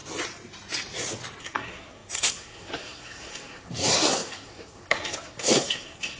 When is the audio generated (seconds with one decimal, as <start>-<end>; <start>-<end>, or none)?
1.4-6.2